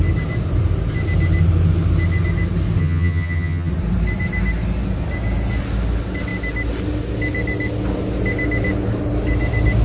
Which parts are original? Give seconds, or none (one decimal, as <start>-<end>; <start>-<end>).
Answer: 0.0-2.8; 3.7-9.8